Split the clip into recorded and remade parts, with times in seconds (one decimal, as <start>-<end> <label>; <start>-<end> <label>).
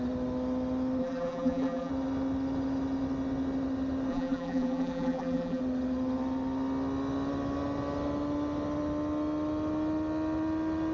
0.0-1.0 recorded; 1.0-1.9 remade; 1.9-4.1 recorded; 4.1-5.6 remade; 5.6-10.9 recorded